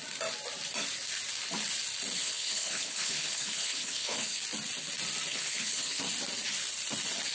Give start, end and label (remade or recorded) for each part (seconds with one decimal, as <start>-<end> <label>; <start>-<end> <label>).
0.0-2.2 recorded; 2.2-4.4 remade; 4.4-5.3 recorded; 5.3-6.0 remade; 6.0-7.3 recorded